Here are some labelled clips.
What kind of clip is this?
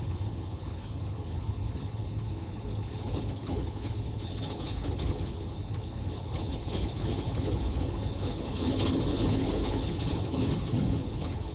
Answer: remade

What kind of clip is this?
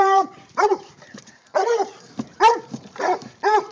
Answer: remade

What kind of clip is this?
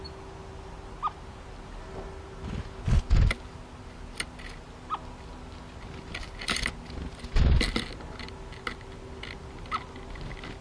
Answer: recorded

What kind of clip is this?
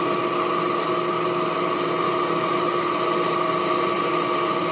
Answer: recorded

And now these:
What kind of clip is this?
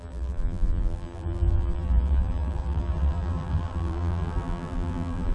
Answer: remade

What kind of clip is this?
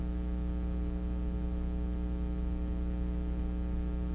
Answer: recorded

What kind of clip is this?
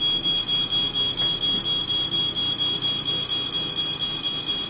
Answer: recorded